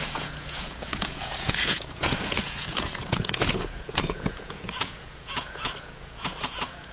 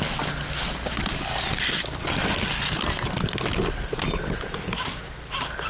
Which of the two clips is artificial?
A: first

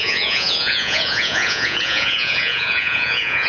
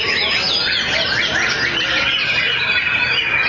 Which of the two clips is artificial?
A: first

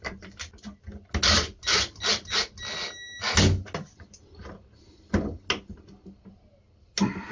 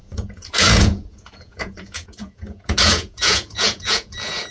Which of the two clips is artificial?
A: second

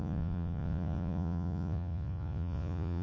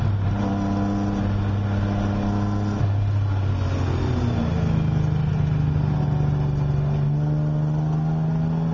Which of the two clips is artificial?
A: first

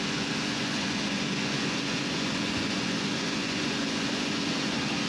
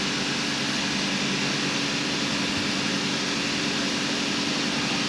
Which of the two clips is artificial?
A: first